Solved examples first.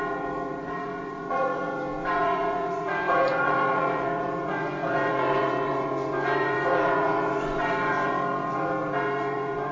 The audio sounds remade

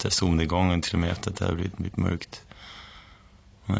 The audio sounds recorded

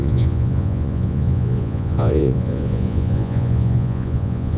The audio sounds remade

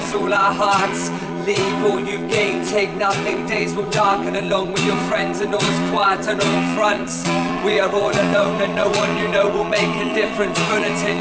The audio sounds remade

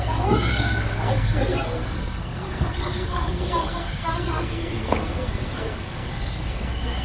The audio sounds remade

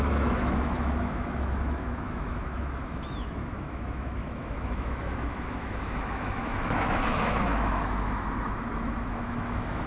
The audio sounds remade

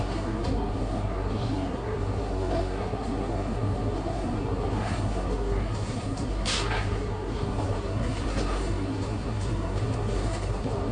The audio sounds remade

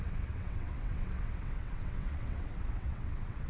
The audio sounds remade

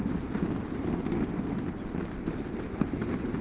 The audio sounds recorded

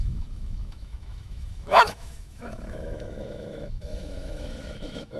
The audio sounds remade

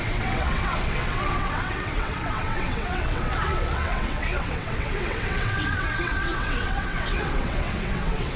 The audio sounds remade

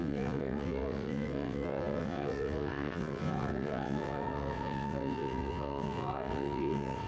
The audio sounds remade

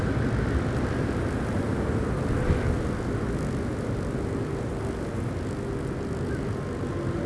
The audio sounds recorded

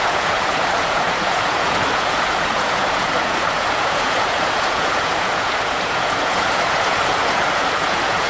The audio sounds remade